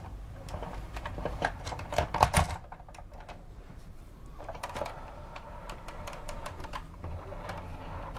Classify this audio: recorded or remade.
remade